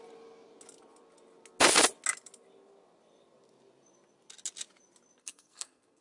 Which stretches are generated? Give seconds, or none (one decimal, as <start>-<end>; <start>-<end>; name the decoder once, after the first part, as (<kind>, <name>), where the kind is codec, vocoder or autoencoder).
5.2-6.0 (codec, SNAC)